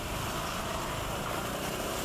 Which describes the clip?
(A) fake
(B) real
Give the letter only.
A